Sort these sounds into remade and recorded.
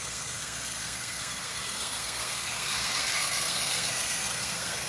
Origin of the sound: remade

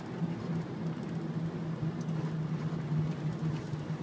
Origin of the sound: recorded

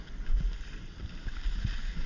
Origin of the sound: recorded